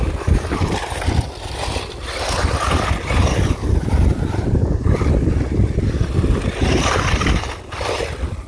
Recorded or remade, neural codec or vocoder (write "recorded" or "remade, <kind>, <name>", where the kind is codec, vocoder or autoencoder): recorded